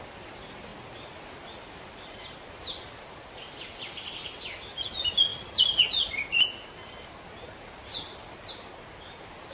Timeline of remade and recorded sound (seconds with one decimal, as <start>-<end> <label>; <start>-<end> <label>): 0.0-9.5 recorded